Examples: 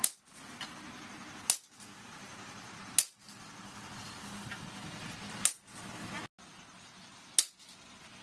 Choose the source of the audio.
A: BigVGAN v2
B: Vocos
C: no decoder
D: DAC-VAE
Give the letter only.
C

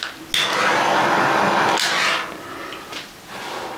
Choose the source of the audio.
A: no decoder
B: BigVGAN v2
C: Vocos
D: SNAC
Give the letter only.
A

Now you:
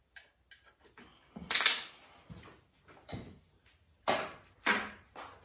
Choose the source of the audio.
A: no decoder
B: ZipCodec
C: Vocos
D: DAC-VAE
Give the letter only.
A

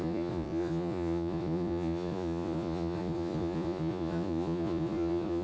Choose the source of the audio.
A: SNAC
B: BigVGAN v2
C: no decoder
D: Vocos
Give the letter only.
D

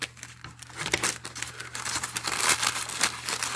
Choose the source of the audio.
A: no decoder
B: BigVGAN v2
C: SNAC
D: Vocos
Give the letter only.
A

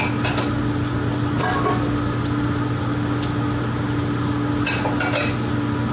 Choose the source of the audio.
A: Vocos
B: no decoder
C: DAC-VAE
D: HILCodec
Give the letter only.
B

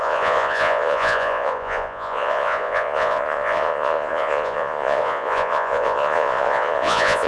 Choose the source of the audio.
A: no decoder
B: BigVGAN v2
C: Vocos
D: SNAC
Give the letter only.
C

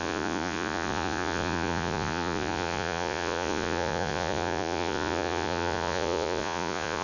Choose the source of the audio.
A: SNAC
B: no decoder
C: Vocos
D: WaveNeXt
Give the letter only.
C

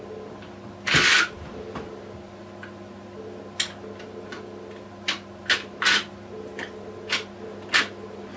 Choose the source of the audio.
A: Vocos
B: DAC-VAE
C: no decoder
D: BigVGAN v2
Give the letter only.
C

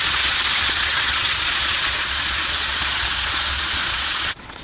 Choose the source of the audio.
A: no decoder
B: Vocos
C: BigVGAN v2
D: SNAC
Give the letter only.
B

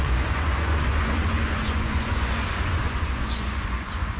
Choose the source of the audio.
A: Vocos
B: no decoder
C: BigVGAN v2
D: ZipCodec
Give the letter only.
A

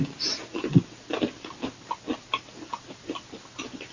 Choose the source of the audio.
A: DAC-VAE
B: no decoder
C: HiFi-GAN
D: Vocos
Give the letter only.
B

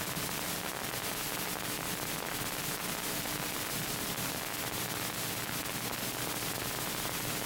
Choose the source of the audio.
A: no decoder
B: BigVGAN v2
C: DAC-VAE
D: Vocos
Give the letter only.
A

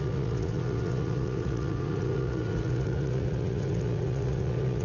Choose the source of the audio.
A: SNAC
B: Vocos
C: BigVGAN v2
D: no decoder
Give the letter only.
B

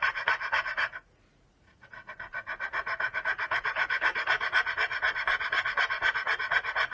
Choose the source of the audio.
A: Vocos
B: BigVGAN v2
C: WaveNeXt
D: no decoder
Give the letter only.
A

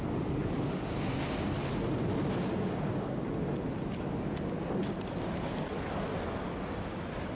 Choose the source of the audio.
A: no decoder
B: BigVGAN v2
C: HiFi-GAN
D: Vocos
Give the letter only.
A